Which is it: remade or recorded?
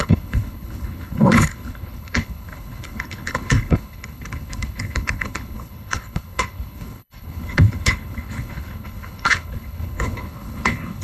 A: remade